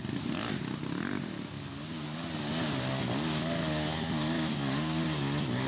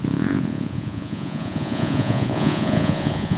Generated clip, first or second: second